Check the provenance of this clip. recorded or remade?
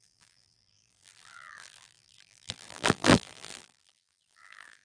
remade